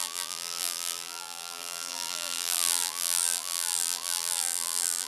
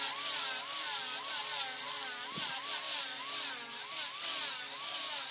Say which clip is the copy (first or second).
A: first